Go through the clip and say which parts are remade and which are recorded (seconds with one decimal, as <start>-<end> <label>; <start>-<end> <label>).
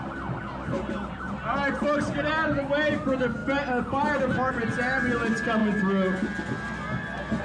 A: 0.0-7.4 recorded